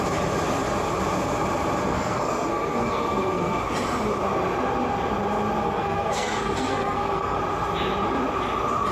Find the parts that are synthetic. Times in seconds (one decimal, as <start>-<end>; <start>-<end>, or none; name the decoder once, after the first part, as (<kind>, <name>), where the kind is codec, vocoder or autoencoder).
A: 1.9-3.6 (codec, SNAC); 5.6-7.4